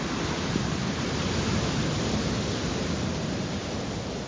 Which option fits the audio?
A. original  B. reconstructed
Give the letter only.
A